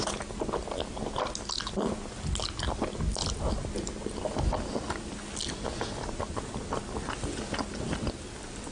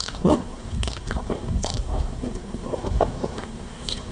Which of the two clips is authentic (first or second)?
first